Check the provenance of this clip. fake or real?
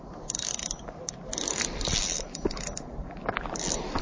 real